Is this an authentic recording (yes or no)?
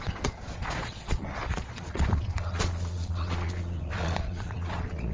no